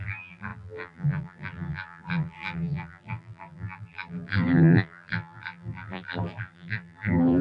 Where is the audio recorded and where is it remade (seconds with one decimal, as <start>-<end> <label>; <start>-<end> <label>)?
0.0-7.4 remade